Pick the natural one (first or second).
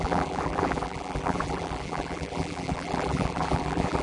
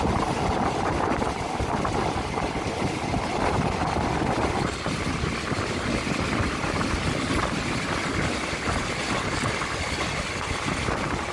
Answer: second